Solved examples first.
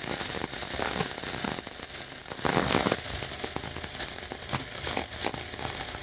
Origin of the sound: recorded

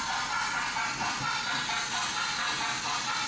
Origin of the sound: recorded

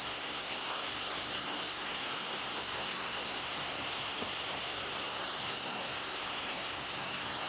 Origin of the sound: remade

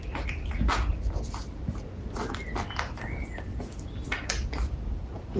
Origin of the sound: recorded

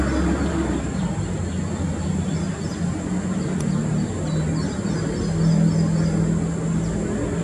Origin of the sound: recorded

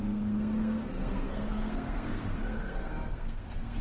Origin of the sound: remade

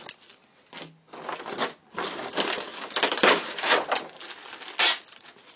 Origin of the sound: recorded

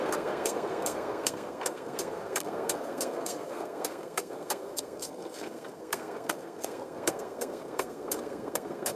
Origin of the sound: remade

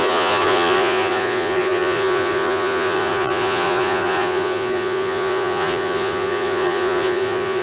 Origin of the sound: remade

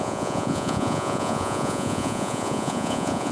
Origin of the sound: remade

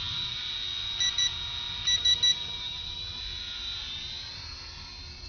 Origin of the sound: recorded